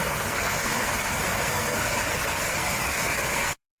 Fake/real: fake